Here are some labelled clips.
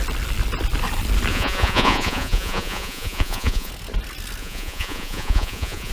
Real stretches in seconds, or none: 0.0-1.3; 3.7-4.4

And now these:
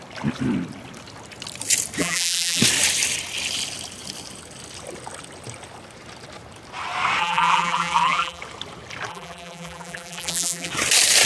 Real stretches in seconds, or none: 0.0-2.0; 2.6-7.2; 8.4-9.1; 10.7-11.3